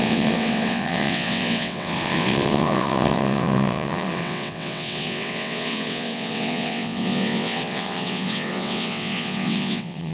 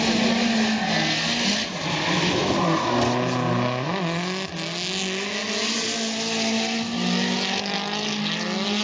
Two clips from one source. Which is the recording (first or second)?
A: second